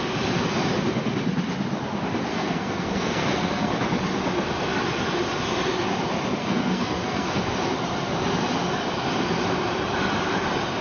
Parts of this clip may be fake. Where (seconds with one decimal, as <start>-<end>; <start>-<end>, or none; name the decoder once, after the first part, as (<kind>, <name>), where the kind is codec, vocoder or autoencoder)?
2.3-3.7 (codec, SNAC); 6.4-7.4